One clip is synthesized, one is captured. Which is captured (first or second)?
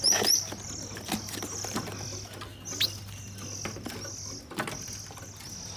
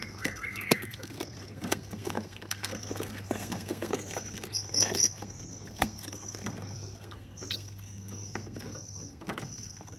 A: first